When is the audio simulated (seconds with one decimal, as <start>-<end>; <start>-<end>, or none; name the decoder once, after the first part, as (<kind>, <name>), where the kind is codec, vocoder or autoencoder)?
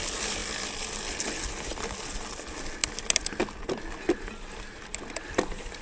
none